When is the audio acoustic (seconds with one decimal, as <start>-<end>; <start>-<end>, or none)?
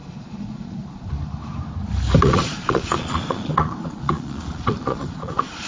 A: 1.1-2.2